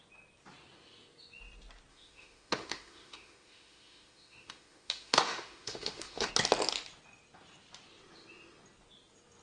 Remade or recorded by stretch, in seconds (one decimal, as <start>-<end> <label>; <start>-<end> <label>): 0.0-1.9 recorded; 1.9-6.3 remade; 6.3-9.4 recorded